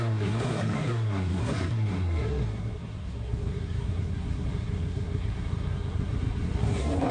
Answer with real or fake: fake